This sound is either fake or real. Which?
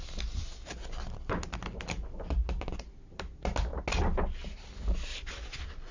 real